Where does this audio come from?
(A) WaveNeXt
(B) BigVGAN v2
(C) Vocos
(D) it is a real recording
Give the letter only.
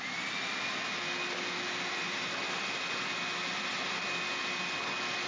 D